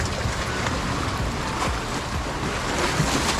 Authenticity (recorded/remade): recorded